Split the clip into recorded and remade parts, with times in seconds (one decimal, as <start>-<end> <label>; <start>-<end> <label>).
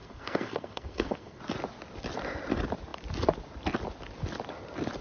0.0-1.4 remade; 1.4-5.0 recorded